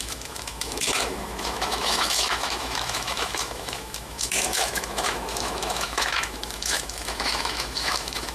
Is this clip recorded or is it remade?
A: remade